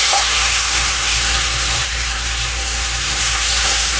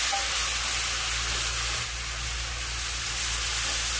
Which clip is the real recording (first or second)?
second